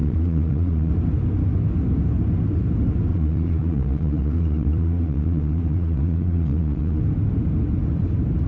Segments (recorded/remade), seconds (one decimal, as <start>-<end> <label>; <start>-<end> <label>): 0.0-0.9 remade; 0.9-3.1 recorded; 3.1-7.0 remade; 7.0-8.5 recorded